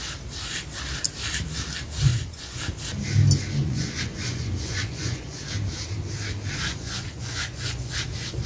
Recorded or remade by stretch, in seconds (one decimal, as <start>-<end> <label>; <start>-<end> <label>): 0.0-2.1 recorded; 2.1-2.6 remade; 2.6-3.6 recorded; 3.6-5.4 remade; 5.4-6.7 recorded; 6.7-7.9 remade; 7.9-8.5 recorded